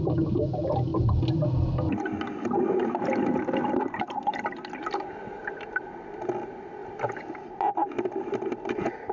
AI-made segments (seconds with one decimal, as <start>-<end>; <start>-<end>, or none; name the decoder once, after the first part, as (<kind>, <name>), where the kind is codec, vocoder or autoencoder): none